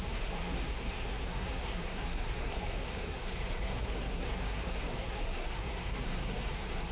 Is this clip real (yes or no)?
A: no